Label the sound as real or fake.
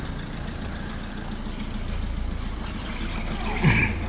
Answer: real